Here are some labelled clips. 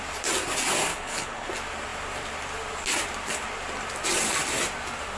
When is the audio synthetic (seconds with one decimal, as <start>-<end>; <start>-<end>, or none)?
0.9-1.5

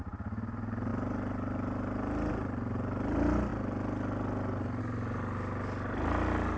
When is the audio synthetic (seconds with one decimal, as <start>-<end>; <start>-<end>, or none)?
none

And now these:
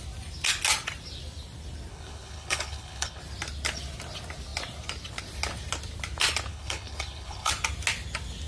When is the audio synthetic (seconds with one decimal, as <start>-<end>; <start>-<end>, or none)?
1.9-3.2; 6.5-7.5

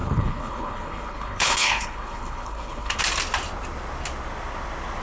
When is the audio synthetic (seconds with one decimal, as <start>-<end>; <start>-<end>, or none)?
0.0-3.0

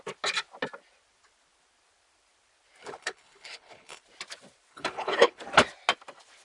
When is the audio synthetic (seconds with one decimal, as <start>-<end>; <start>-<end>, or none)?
2.8-4.0; 4.7-5.4